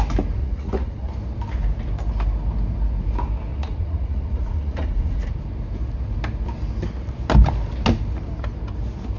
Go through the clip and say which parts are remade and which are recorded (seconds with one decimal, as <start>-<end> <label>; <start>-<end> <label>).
0.0-0.4 recorded; 0.4-1.1 remade; 1.1-3.5 recorded; 3.5-5.3 remade; 5.3-9.2 recorded